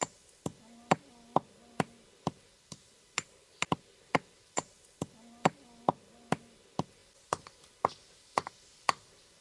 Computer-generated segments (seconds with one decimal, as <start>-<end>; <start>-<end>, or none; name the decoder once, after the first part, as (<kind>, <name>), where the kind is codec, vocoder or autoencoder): none